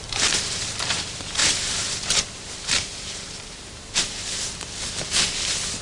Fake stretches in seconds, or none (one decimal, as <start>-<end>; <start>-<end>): 0.0-5.8